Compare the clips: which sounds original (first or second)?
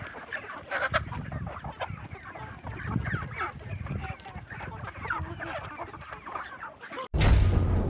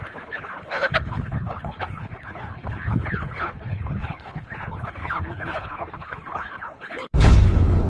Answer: first